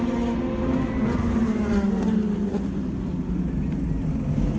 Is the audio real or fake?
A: real